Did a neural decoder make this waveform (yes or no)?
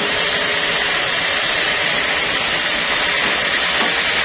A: no